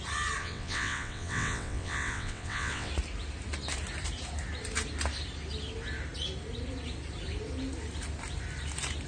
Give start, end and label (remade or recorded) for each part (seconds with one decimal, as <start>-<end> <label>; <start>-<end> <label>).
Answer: 0.0-0.4 recorded; 0.4-2.9 remade; 2.9-9.1 recorded